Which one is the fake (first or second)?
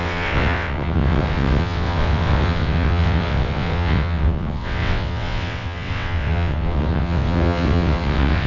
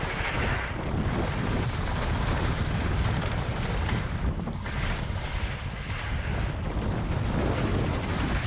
first